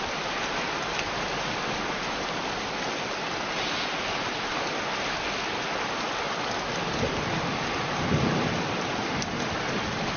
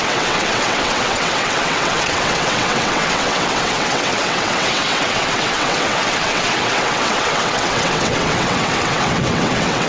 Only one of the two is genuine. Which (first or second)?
first